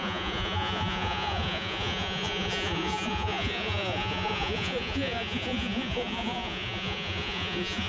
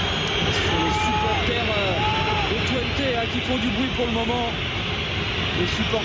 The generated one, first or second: first